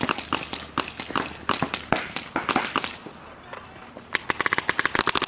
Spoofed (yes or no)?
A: no